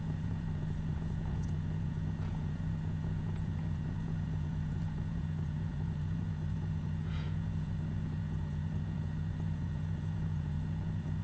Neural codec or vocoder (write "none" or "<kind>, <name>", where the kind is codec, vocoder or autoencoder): vocoder, Vocos